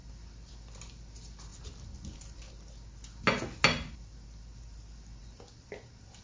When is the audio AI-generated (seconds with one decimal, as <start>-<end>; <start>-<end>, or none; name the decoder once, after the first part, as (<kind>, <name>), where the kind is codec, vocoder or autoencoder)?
none